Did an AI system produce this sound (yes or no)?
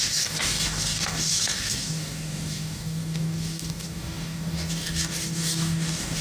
yes